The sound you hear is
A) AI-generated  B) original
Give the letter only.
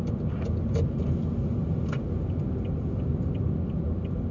B